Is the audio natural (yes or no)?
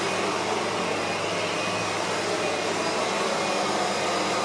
yes